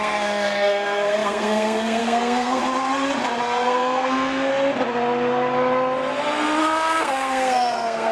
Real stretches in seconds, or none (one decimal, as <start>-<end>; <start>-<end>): 2.6-3.4; 4.5-6.6